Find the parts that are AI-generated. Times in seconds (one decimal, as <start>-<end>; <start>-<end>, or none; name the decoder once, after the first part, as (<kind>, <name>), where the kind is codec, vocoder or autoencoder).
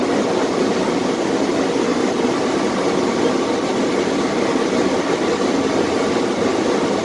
none